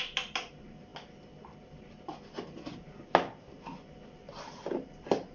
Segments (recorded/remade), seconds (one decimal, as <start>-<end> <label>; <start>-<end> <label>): 0.0-5.3 recorded